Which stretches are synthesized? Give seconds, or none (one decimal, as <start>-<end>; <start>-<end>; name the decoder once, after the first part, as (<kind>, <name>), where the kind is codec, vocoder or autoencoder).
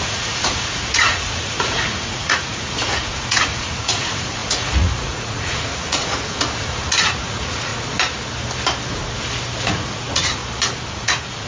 0.0-7.7 (vocoder, Vocos); 9.6-10.4; 10.9-11.5